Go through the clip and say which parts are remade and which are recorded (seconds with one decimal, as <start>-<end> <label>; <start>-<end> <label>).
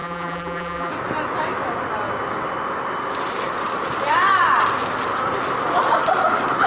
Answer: 0.0-0.9 remade; 0.9-6.7 recorded